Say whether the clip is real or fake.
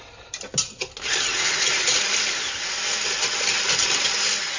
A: real